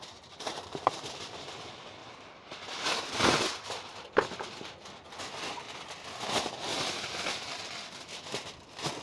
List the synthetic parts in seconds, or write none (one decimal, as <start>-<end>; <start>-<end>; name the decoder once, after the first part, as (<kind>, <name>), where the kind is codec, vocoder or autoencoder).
0.5-1.0 (vocoder, BigVGAN v2); 2.0-3.1; 6.7-7.7